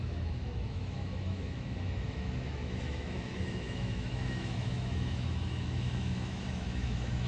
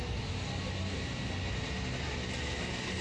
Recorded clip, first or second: second